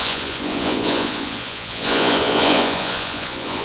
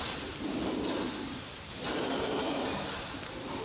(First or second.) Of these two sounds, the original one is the second